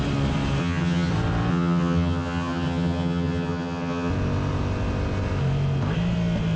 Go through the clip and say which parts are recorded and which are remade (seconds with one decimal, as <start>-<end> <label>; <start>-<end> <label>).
0.0-0.6 recorded; 0.6-1.1 remade; 1.1-1.5 recorded; 1.5-4.1 remade; 4.1-6.6 recorded